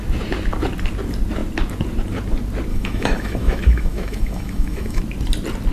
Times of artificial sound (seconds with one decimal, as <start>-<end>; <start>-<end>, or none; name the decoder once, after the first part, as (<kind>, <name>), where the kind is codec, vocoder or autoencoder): 2.7-5.0 (autoencoder, DAC-VAE)